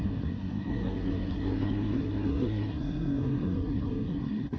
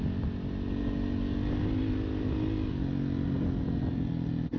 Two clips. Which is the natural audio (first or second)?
second